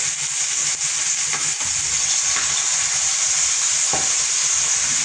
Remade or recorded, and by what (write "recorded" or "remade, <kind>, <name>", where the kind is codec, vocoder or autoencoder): recorded